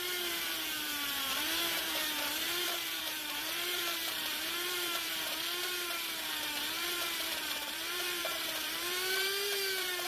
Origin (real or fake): fake